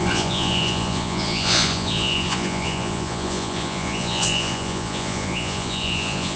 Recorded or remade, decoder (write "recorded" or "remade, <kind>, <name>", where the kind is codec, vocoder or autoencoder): remade, vocoder, Vocos